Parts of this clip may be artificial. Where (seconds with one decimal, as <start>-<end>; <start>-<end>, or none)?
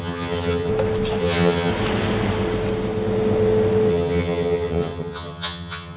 0.0-0.7; 1.2-1.7; 3.9-6.0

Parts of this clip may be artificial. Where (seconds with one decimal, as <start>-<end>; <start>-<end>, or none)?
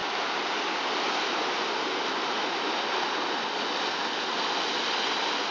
none